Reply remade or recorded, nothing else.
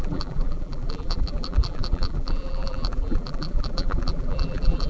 remade